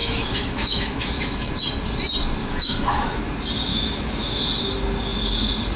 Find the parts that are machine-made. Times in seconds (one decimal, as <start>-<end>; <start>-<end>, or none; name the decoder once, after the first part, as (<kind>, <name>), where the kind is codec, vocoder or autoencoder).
0.0-1.5 (autoencoder, DAC-VAE); 2.4-3.3; 3.7-4.4